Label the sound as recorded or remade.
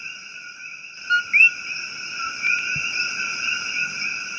recorded